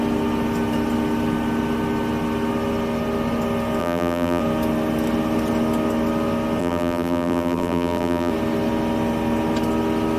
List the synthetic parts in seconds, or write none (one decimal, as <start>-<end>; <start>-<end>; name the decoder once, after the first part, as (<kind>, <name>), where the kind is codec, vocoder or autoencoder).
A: 3.8-4.4 (vocoder, BigVGAN v2); 6.6-8.3